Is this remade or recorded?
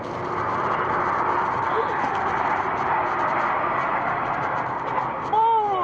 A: recorded